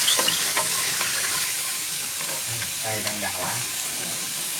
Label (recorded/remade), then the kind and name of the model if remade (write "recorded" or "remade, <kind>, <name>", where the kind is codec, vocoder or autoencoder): remade, codec, DAC